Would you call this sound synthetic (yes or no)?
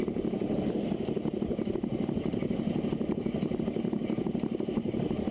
no